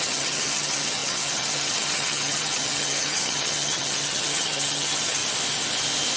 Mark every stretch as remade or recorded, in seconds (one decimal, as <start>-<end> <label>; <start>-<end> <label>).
0.0-5.2 remade; 5.2-6.2 recorded